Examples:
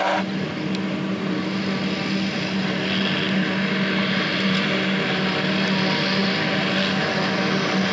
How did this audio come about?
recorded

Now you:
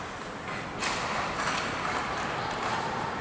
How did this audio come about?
recorded